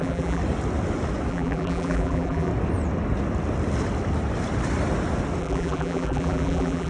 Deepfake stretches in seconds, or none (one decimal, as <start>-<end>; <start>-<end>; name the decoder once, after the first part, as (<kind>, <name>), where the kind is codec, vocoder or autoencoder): 0.0-0.4 (vocoder, BigVGAN v2); 1.3-2.5; 5.4-6.9